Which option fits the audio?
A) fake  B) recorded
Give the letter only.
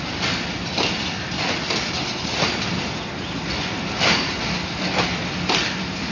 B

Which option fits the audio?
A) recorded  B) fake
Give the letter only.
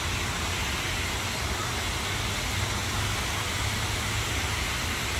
A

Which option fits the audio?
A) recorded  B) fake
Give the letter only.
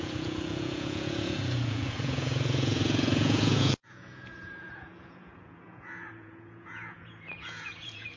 B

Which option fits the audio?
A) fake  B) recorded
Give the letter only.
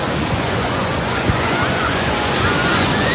A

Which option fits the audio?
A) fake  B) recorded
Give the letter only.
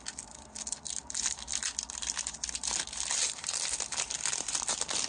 B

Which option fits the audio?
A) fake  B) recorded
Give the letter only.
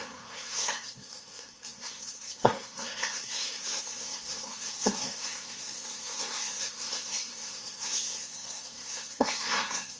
A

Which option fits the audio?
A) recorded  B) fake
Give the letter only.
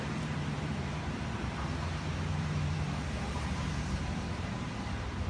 B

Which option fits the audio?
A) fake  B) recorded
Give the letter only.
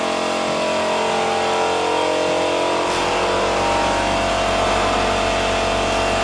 B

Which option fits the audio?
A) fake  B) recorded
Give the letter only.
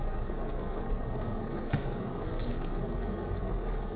A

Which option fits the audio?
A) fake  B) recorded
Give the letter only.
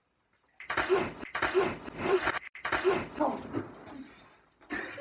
B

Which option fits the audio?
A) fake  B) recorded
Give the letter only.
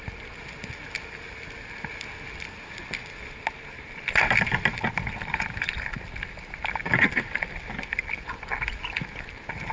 B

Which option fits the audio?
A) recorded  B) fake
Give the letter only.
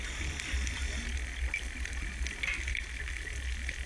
A